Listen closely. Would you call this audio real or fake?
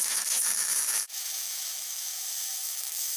fake